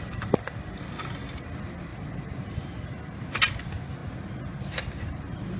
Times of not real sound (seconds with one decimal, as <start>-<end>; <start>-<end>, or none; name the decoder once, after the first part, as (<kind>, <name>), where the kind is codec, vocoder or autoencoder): none